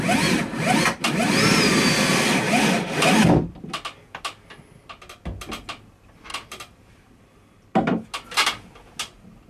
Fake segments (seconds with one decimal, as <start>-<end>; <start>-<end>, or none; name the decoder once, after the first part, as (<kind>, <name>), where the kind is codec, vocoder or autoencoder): 6.3-7.2 (vocoder, BigVGAN v2)